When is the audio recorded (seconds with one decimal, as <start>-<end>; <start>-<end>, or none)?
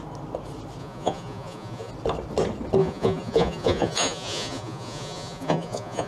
0.0-0.8; 1.9-2.8